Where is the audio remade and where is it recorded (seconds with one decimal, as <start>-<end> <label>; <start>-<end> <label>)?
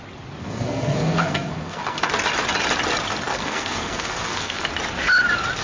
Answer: 0.0-0.4 recorded; 0.4-2.1 remade; 2.1-3.3 recorded; 3.3-4.7 remade; 4.7-5.6 recorded